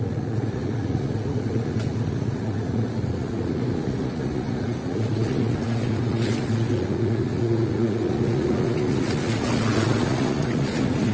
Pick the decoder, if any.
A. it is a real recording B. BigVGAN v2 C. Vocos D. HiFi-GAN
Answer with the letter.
C